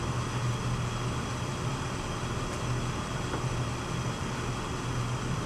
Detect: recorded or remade recorded